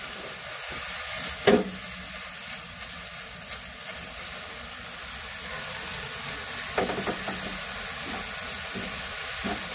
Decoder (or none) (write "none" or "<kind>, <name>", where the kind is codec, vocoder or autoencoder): none